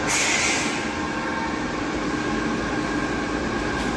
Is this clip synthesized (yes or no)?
no